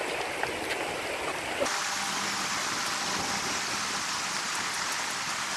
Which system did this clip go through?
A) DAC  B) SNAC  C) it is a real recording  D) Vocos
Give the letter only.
C